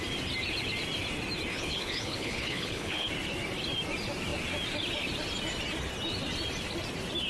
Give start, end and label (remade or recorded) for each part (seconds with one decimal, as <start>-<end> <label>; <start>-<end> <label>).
0.0-1.5 recorded; 1.5-3.1 remade; 3.1-7.3 recorded